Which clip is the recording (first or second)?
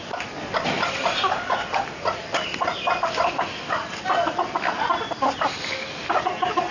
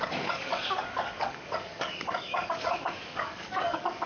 first